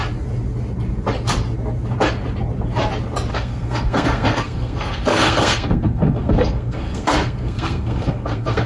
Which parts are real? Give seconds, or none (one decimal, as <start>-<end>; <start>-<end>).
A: 0.0-3.3